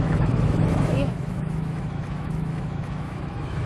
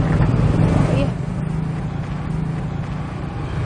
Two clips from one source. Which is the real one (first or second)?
second